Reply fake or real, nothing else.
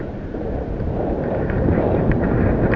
fake